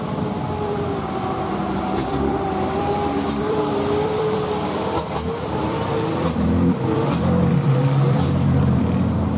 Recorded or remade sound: remade